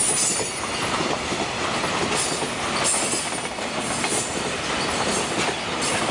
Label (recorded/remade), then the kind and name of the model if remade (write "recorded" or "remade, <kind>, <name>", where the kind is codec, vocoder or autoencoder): recorded